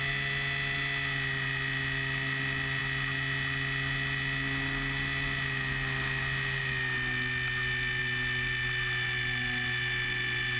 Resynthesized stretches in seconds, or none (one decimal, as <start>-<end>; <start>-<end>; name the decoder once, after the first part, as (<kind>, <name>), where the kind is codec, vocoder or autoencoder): none